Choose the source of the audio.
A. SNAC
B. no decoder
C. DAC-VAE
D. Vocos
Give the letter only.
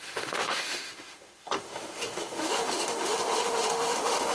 C